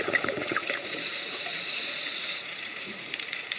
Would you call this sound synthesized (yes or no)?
yes